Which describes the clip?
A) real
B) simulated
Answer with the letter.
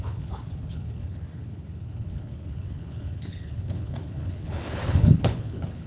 B